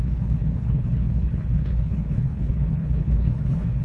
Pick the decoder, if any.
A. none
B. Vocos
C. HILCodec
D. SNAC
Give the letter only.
C